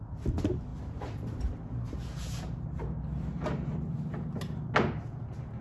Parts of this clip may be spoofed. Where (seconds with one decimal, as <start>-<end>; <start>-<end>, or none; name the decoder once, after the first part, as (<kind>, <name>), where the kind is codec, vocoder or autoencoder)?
0.7-4.1 (vocoder, BigVGAN v2)